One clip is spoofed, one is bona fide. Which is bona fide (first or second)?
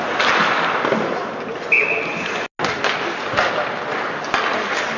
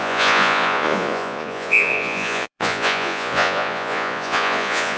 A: first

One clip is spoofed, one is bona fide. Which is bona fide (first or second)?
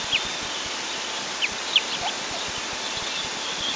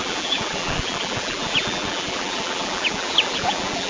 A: first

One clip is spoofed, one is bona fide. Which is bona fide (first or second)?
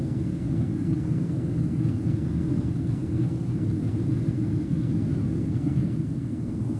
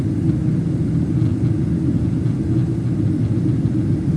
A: second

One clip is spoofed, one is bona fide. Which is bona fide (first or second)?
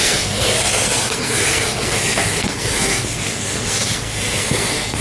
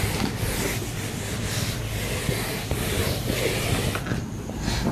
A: second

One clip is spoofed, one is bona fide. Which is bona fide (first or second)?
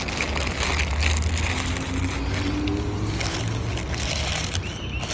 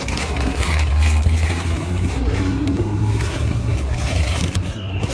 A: first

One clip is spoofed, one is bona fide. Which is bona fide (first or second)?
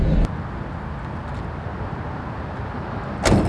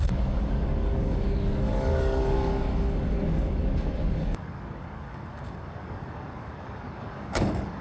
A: first